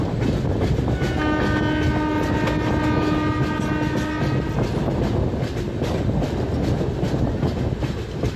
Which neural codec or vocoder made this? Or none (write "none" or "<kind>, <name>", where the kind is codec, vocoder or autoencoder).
none